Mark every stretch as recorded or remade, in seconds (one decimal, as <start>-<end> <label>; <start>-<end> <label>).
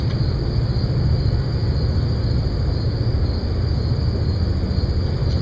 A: 0.0-5.4 recorded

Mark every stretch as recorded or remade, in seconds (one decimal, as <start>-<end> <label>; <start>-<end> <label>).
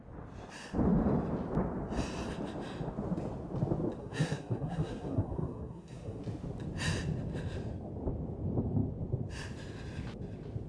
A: 0.0-4.0 recorded; 4.0-6.2 remade; 6.2-10.7 recorded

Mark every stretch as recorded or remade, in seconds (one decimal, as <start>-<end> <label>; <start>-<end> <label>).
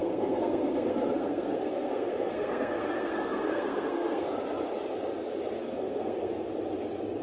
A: 0.0-4.3 remade; 4.3-5.6 recorded; 5.6-6.3 remade; 6.3-7.2 recorded